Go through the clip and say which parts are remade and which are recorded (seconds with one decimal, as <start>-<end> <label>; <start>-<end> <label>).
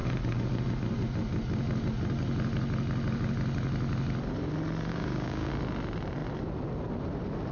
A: 0.0-4.9 recorded; 4.9-5.5 remade; 5.5-7.5 recorded